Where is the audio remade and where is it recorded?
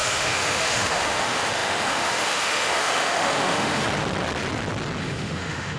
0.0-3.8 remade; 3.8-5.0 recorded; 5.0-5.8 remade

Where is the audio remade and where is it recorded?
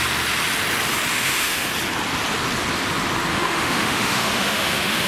0.0-1.1 recorded; 1.1-1.7 remade; 1.7-3.3 recorded; 3.3-5.1 remade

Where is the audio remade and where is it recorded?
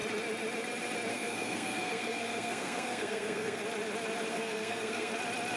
0.0-1.1 recorded; 1.1-3.6 remade; 3.6-4.3 recorded; 4.3-5.1 remade; 5.1-5.6 recorded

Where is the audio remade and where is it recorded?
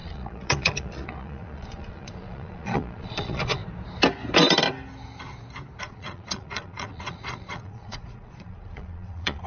0.0-3.6 remade; 3.6-5.8 recorded; 5.8-9.5 remade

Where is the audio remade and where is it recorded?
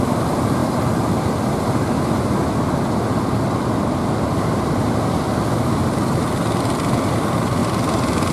0.0-8.3 recorded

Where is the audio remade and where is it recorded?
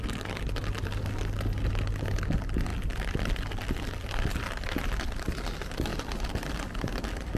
0.0-7.4 recorded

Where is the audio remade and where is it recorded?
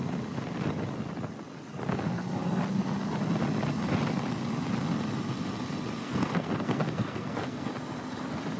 0.0-6.0 recorded; 6.0-7.7 remade; 7.7-8.6 recorded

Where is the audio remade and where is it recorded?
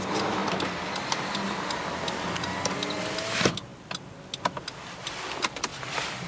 0.0-6.3 recorded